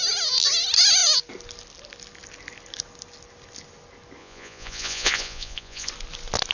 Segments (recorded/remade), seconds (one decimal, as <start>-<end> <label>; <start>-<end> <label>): 0.0-4.2 recorded; 4.2-5.9 remade; 5.9-6.5 recorded